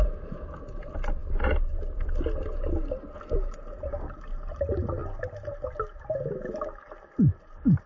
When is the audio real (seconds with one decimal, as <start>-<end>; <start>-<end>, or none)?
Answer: 0.0-7.9